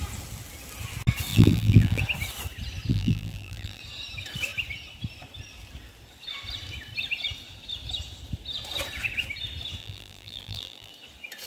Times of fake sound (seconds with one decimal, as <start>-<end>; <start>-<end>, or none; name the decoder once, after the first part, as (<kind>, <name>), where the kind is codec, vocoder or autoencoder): 1.3-2.0 (vocoder, BigVGAN v2); 2.9-3.8; 9.8-10.9